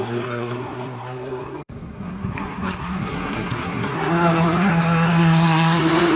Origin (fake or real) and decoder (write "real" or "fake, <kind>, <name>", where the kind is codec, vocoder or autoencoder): fake, codec, SNAC